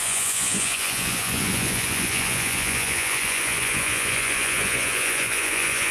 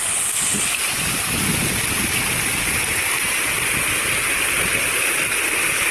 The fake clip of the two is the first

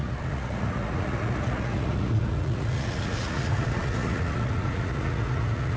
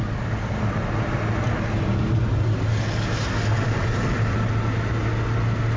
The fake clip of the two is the first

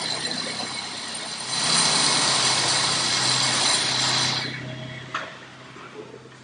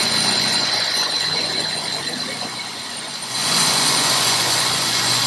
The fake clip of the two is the second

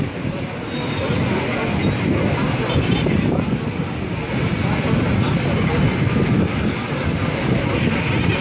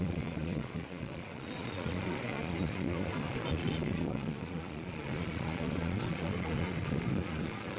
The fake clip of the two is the second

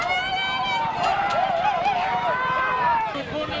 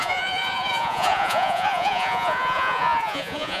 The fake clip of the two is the second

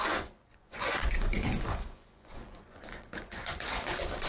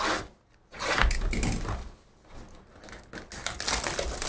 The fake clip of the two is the first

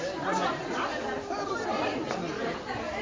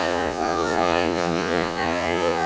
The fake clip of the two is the second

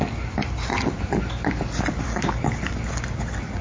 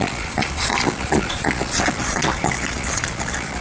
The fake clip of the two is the second